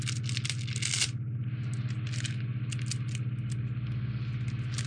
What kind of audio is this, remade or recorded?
recorded